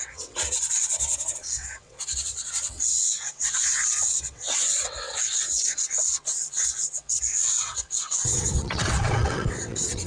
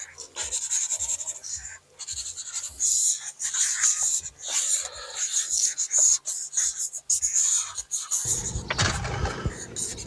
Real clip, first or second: second